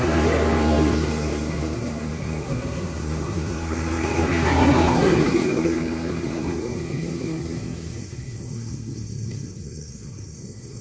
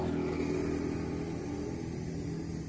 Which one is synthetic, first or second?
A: first